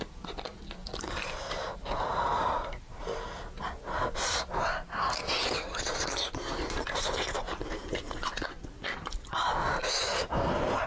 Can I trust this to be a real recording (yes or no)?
yes